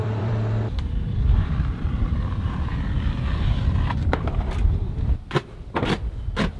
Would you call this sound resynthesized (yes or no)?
yes